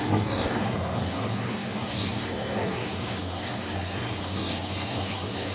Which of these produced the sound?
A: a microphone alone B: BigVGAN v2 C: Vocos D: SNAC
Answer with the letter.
D